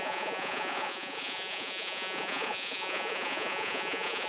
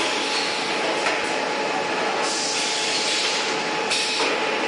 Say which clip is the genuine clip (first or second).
second